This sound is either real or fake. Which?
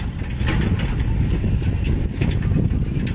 real